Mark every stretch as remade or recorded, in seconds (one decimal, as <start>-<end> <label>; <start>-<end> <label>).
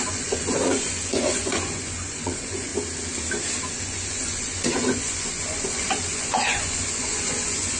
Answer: 0.0-2.7 remade; 2.7-3.8 recorded; 3.8-7.8 remade